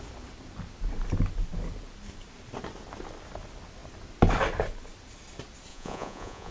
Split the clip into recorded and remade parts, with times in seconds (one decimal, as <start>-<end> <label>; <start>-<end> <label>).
0.0-5.7 recorded; 5.7-6.5 remade